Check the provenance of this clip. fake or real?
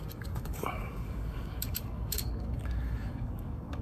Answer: fake